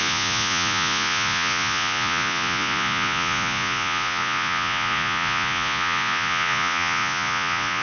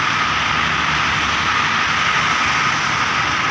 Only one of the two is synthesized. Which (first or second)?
first